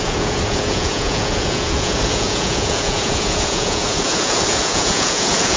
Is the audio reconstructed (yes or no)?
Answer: yes